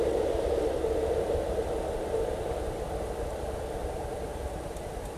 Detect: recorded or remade recorded